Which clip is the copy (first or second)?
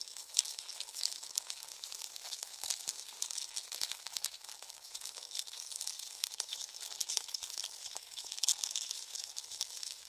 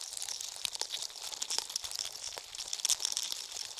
first